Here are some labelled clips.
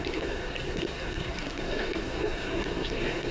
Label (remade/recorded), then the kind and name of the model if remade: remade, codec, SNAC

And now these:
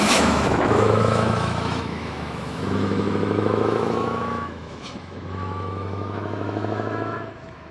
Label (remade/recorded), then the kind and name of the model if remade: remade, autoencoder, DAC-VAE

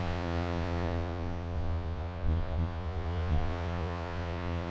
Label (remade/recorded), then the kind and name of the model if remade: remade, vocoder, Vocos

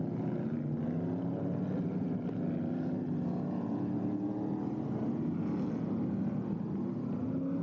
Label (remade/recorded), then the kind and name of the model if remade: recorded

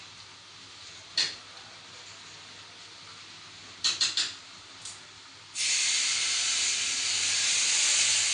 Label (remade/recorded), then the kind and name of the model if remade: recorded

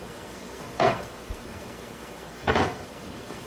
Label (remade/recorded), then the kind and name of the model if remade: remade, codec, SNAC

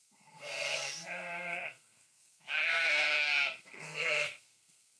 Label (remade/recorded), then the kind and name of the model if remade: remade, codec, SNAC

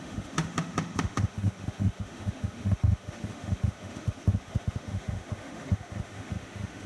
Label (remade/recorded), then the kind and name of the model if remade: remade, autoencoder, DAC-VAE